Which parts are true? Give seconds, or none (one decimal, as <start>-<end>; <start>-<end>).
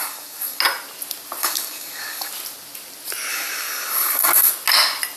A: 0.6-1.4; 2.3-3.3; 4.5-5.2